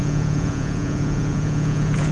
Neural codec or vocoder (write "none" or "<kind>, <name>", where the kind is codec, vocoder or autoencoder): vocoder, Vocos